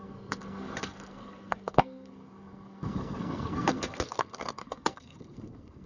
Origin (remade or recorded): remade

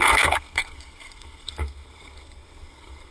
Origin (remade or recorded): remade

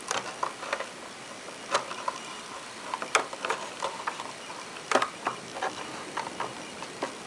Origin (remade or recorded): recorded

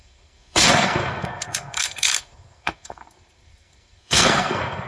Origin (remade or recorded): remade